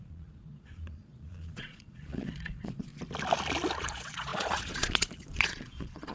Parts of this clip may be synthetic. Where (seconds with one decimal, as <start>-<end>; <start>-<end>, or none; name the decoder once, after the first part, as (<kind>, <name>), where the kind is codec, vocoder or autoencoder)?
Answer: 0.0-2.9 (vocoder, Vocos); 3.8-6.1